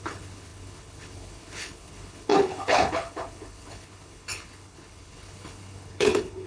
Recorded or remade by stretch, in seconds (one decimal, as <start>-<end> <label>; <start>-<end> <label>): 0.0-6.5 remade